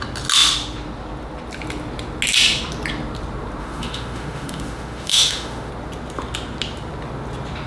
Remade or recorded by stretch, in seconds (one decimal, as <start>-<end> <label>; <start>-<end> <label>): 0.0-3.6 recorded; 3.6-5.7 remade; 5.7-7.7 recorded